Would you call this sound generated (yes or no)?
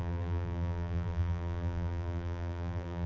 yes